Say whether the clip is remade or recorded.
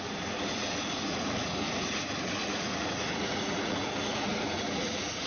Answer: remade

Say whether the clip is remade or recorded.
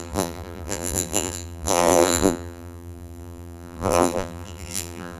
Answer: remade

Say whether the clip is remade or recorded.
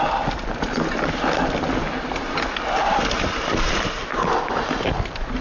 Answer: recorded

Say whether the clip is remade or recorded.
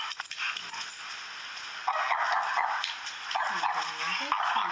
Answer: recorded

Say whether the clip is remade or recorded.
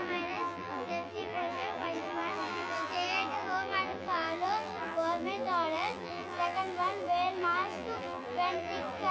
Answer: remade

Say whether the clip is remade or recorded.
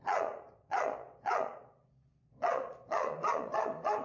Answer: remade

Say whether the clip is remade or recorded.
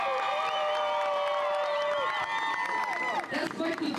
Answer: recorded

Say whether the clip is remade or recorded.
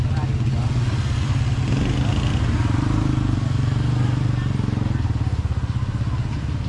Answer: recorded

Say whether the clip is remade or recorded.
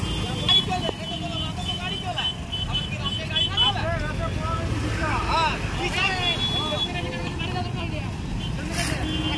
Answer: recorded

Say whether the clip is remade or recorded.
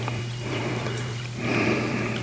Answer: remade